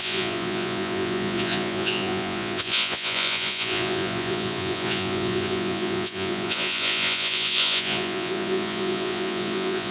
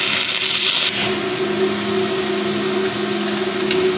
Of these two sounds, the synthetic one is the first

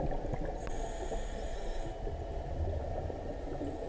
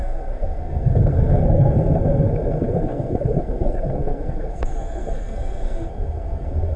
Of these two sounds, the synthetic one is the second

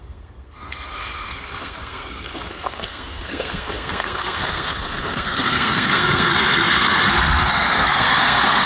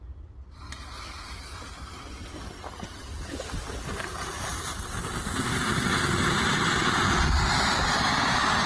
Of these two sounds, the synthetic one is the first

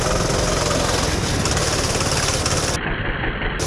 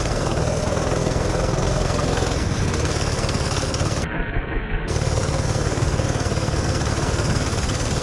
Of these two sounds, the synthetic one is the second